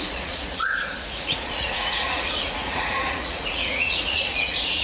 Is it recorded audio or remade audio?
remade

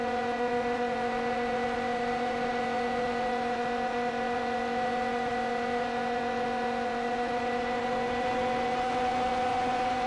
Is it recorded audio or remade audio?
remade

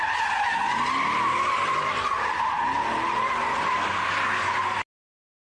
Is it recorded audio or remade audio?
recorded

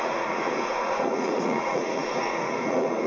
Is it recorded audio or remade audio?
remade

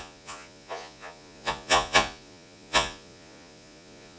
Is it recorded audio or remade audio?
remade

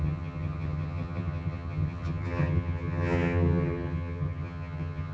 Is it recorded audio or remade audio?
remade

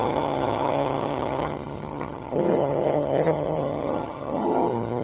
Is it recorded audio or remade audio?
remade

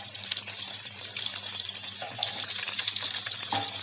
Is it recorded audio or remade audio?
remade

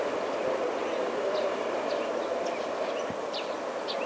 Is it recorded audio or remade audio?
recorded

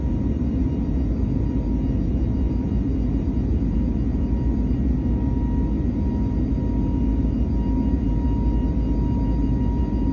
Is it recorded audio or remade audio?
recorded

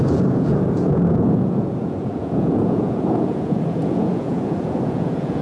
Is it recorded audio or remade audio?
remade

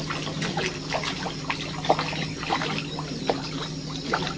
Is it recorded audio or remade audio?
recorded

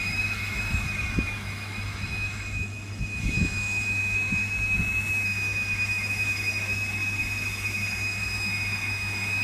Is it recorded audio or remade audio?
remade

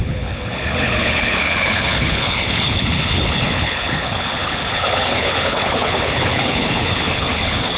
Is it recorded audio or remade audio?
remade